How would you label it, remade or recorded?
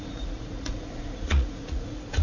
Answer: remade